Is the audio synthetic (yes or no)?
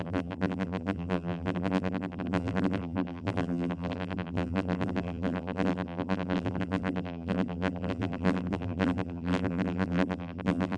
yes